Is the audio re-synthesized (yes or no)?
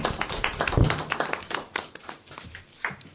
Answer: no